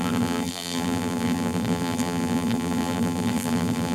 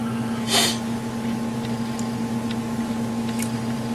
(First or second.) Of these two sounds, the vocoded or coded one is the first